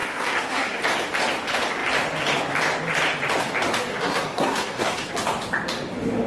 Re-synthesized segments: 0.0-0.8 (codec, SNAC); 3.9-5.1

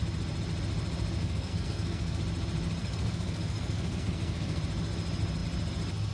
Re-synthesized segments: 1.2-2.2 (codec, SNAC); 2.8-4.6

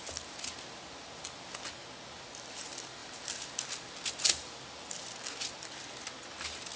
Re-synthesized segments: none